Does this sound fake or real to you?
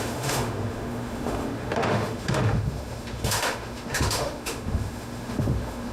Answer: fake